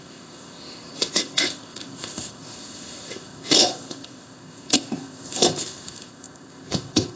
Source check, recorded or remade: remade